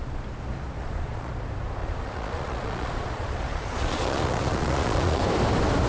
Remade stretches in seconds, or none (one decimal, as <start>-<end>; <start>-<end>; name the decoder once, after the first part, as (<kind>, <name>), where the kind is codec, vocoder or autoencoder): 0.8-1.3 (vocoder, Vocos); 1.8-5.2